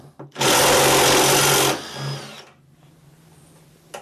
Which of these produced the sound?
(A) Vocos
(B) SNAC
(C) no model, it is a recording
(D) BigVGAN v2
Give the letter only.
C